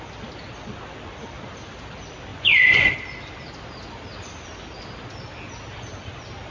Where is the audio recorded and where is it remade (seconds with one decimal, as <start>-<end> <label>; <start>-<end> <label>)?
0.0-2.3 recorded; 2.3-2.9 remade; 2.9-6.5 recorded